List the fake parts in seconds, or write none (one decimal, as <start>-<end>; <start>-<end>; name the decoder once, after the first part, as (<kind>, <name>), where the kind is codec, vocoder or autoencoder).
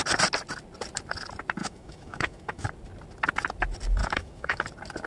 1.6-2.7 (autoencoder, DAC-VAE); 4.0-4.6